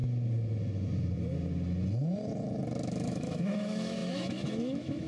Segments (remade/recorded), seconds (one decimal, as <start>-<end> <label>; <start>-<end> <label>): 0.0-2.9 recorded; 2.9-5.1 remade